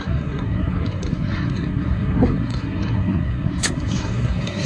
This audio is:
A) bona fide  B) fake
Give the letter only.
B